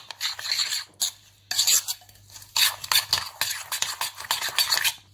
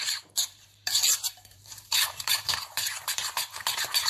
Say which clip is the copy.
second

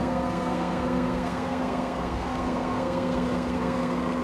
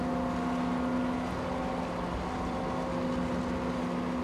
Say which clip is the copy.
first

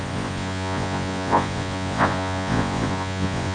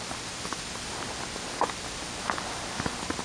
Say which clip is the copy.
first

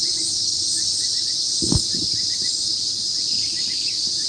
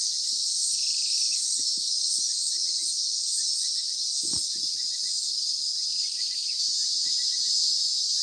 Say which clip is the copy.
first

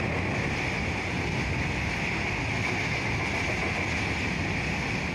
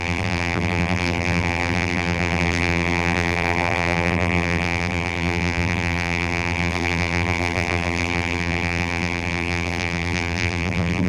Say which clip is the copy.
second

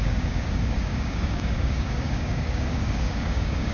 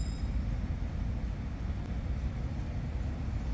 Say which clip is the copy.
first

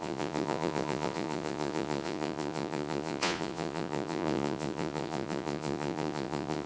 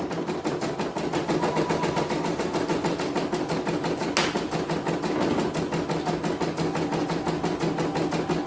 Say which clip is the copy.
first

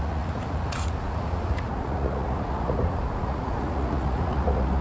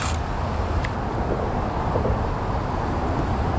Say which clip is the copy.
first